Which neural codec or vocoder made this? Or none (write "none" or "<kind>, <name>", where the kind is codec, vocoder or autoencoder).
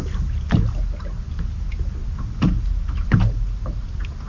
none